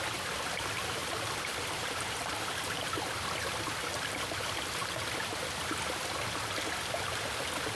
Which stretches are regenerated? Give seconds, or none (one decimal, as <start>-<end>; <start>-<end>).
none